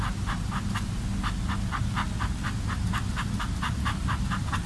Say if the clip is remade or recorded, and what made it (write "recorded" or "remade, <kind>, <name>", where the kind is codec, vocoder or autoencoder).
recorded